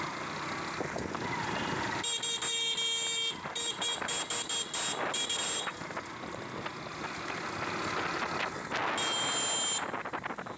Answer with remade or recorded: recorded